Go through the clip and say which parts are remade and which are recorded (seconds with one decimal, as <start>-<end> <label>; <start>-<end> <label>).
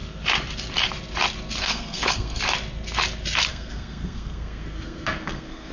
0.0-1.6 recorded; 1.6-2.4 remade; 2.4-3.5 recorded; 3.5-5.7 remade